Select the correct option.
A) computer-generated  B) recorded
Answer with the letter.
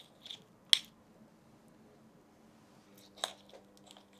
B